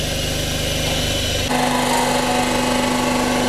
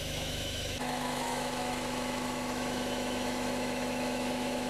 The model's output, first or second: second